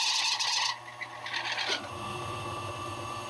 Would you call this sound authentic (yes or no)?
yes